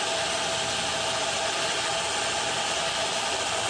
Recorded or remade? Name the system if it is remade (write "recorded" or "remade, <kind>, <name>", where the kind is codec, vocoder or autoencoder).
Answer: recorded